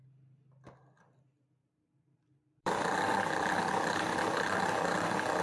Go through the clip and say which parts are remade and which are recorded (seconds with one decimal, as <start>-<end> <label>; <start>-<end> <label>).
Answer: 0.0-1.6 recorded; 1.6-4.6 remade; 4.6-5.4 recorded